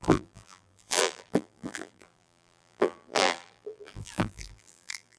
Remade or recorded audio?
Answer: remade